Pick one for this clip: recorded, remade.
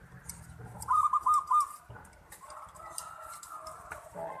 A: recorded